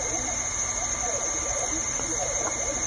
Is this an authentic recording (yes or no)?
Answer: yes